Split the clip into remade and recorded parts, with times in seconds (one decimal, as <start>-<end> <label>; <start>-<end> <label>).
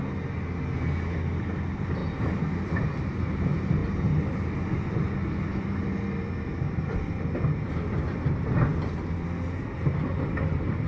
0.0-10.9 recorded